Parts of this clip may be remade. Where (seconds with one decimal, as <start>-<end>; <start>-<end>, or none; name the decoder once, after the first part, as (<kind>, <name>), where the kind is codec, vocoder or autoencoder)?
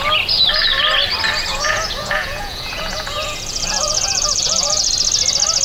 1.5-4.9 (vocoder, Vocos)